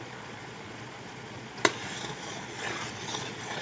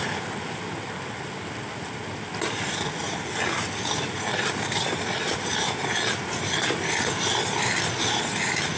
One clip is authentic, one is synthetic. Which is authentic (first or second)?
second